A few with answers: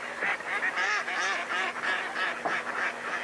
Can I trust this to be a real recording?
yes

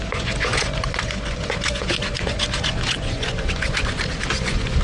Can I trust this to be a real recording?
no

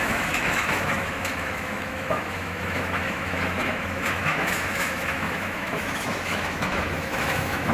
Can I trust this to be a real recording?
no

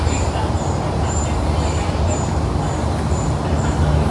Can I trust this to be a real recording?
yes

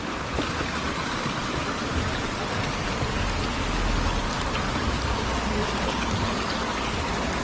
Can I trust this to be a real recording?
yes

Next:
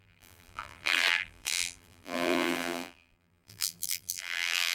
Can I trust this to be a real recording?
no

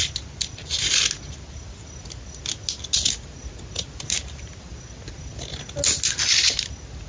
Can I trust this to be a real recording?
yes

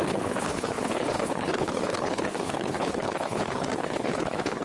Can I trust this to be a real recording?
no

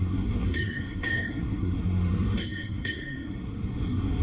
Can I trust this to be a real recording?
no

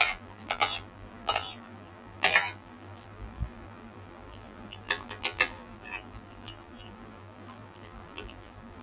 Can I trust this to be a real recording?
no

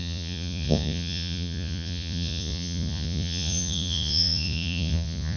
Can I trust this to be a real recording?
no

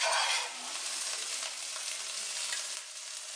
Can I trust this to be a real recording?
yes